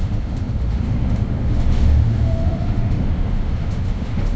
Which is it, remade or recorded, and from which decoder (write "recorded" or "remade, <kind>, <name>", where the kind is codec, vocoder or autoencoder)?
remade, autoencoder, DAC-VAE